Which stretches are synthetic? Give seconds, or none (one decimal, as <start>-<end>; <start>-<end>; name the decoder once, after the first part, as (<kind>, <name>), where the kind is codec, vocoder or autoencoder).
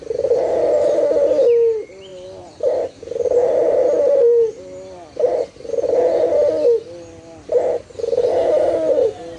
2.1-4.6 (vocoder, BigVGAN v2)